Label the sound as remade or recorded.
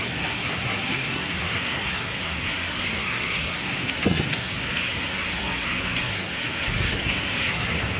remade